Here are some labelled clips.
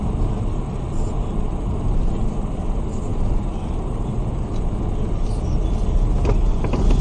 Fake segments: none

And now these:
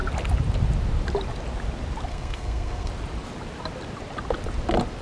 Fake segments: 2.1-2.9 (codec, SNAC)

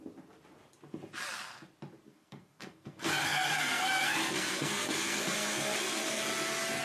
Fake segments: 2.1-6.2 (codec, SNAC)

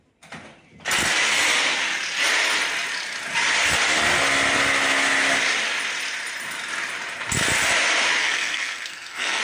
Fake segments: 8.2-9.4 (codec, SNAC)

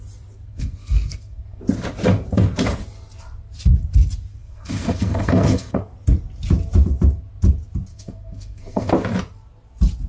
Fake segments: 0.5-1.6 (codec, SNAC); 4.4-5.9; 7.9-8.9

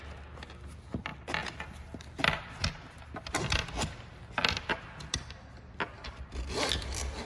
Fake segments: none

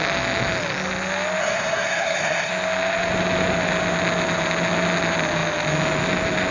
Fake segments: 1.4-2.5 (codec, SNAC)